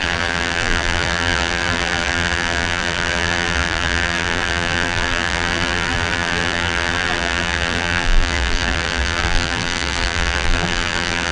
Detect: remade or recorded remade